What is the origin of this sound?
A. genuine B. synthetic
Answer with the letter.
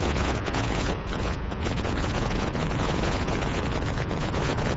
B